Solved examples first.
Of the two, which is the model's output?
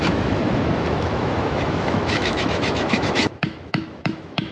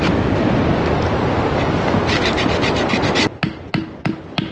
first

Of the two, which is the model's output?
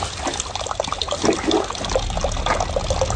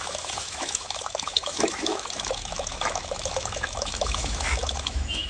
second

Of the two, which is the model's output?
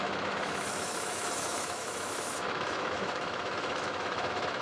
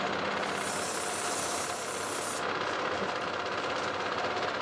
first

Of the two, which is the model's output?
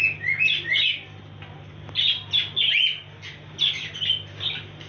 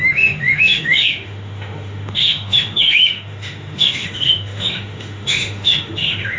second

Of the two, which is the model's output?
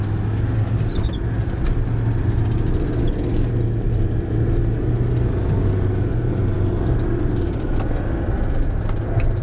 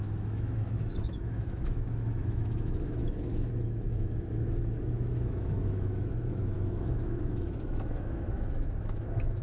second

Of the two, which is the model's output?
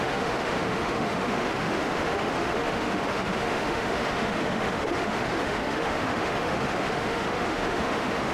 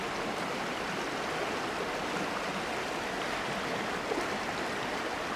first